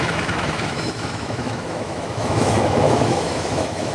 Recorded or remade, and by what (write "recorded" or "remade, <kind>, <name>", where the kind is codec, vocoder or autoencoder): remade, autoencoder, DAC-VAE